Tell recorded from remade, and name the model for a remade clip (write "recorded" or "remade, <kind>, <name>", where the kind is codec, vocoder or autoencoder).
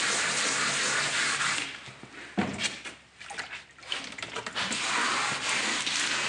recorded